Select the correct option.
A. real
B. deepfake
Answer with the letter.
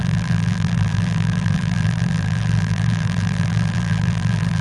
B